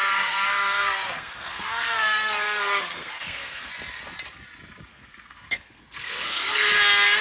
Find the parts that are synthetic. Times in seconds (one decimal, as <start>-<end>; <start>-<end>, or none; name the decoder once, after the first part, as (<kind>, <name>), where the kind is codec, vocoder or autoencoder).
0.0-3.7 (codec, SNAC); 4.9-6.8